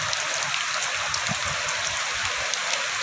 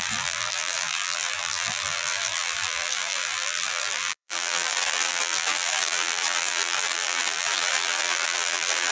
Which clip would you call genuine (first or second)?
first